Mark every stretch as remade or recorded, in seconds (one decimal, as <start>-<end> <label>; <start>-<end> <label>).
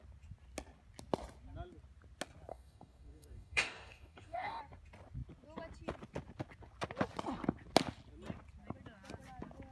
0.0-2.5 recorded; 2.5-4.6 remade; 4.6-9.7 recorded